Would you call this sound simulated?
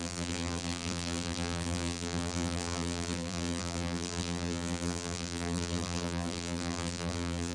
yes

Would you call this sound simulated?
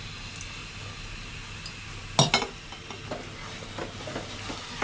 no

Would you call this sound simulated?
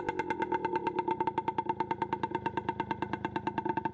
no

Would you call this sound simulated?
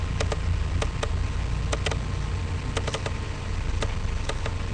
no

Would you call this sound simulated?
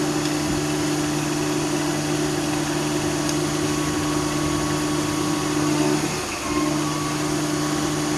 no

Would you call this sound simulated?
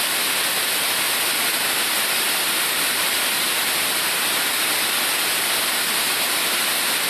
no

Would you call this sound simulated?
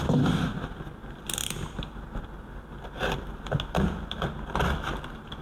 no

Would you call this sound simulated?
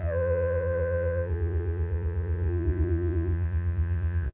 yes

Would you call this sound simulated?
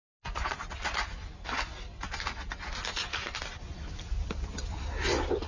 no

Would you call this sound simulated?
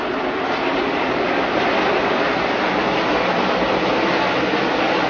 no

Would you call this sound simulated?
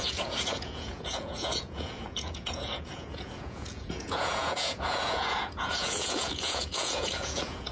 yes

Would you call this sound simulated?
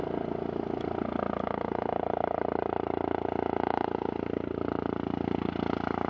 no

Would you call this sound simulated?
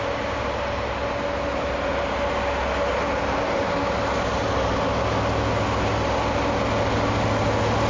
no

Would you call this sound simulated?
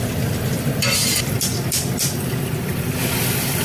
yes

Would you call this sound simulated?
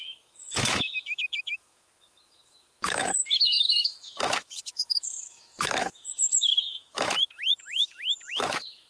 yes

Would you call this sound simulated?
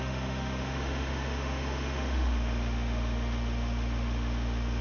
yes